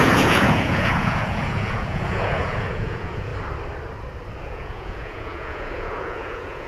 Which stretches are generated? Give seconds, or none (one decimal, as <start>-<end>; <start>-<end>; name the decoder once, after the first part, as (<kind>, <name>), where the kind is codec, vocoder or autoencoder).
0.0-3.3 (vocoder, Vocos); 4.4-6.7